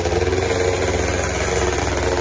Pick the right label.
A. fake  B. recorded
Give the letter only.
B